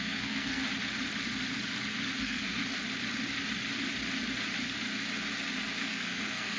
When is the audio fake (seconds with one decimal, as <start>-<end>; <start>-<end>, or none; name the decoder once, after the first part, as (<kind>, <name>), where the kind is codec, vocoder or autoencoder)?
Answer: 0.0-0.6 (codec, SNAC); 2.2-2.6; 5.9-6.6